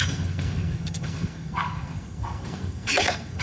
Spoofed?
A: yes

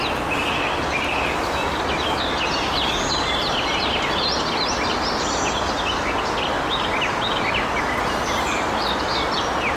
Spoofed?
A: no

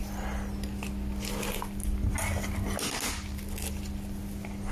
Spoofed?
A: no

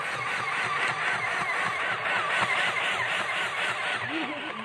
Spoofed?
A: yes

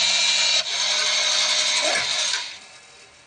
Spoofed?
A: no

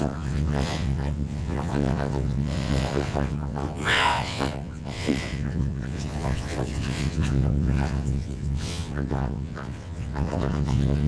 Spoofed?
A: yes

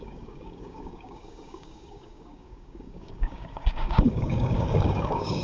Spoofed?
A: yes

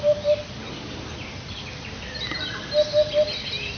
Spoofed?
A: no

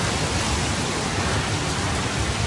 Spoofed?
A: yes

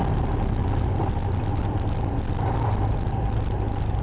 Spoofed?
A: no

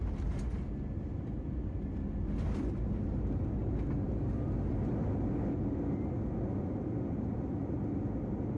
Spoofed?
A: no